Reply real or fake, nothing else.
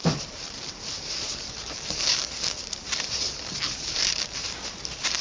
fake